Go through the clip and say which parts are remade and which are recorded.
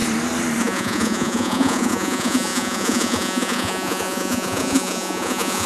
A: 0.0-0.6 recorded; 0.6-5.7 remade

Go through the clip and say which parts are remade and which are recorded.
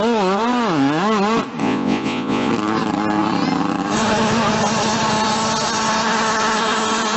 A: 0.0-1.6 recorded; 1.6-2.5 remade; 2.5-7.2 recorded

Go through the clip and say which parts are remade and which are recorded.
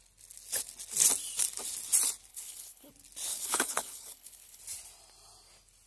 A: 0.0-2.3 recorded; 2.3-2.9 remade; 2.9-3.3 recorded; 3.3-4.6 remade; 4.6-5.9 recorded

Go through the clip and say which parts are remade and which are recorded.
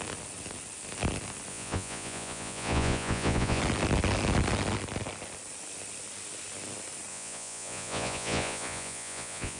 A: 0.0-1.5 recorded; 1.5-3.6 remade; 3.6-7.1 recorded; 7.1-9.6 remade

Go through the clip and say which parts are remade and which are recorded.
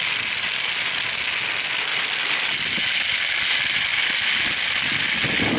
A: 0.0-5.6 recorded